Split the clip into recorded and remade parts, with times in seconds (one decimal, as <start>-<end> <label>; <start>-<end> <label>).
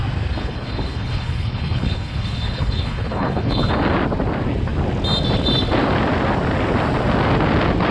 0.0-0.4 recorded; 0.4-3.7 remade; 3.7-7.9 recorded